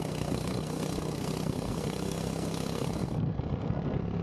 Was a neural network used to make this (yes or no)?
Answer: yes